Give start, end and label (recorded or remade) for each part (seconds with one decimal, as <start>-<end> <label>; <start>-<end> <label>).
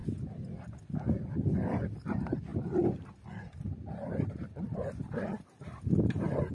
0.0-6.5 recorded